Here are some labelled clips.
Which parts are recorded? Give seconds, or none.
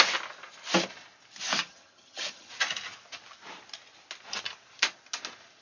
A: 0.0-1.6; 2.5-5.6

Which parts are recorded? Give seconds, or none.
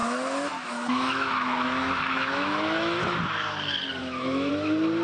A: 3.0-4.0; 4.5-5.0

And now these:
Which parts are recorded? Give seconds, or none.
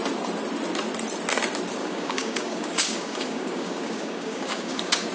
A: 0.0-1.8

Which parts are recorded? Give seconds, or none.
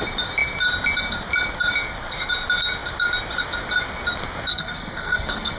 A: 0.0-4.5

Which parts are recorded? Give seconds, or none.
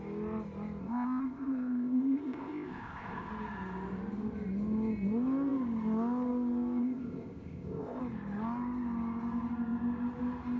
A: 0.0-0.8; 3.3-6.8; 8.0-10.6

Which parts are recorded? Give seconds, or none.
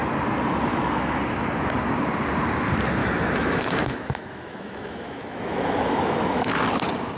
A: 0.0-0.7; 1.2-3.0; 6.5-7.2